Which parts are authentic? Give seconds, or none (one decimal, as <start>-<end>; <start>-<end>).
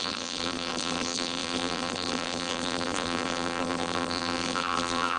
none